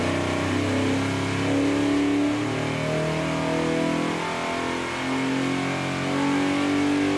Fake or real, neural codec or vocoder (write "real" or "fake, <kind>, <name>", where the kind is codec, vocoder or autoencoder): real